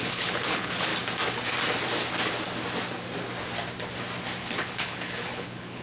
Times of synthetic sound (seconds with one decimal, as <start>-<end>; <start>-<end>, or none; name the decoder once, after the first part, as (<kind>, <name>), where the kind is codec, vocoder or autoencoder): 0.0-0.9 (codec, HILCodec); 4.4-5.8